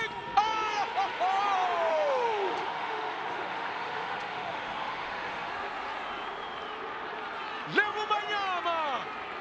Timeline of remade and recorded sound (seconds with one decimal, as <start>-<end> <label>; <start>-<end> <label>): 0.0-1.9 recorded; 1.9-5.5 remade; 5.5-9.4 recorded